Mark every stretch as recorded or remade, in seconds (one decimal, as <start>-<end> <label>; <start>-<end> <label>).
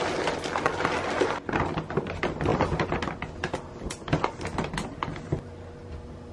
0.0-6.3 recorded